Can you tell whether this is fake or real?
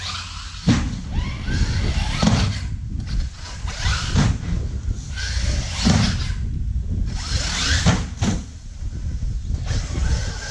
real